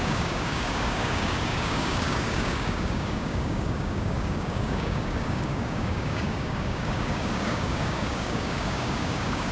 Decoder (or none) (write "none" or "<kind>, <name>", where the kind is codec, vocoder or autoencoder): codec, DAC